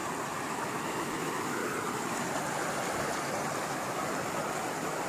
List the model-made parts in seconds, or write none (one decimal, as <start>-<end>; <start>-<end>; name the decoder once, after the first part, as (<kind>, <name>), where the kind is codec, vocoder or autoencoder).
0.5-1.6 (autoencoder, DAC-VAE); 3.6-4.0